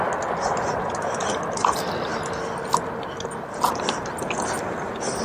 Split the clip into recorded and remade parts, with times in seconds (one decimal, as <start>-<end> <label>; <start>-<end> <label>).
0.0-5.2 recorded